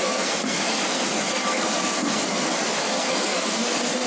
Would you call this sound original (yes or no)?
no